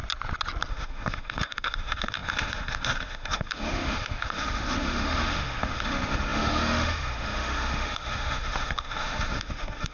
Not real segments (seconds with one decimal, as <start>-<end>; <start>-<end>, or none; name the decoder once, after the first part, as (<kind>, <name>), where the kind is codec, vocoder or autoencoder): 0.7-9.9 (autoencoder, DAC-VAE)